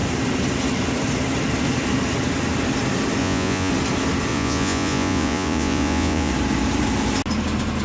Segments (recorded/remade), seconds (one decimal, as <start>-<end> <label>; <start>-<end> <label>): 0.0-3.2 recorded; 3.2-3.7 remade; 3.7-4.3 recorded; 4.3-6.3 remade; 6.3-7.8 recorded